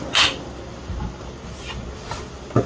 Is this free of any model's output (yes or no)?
yes